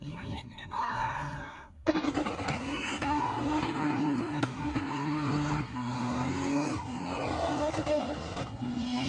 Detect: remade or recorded remade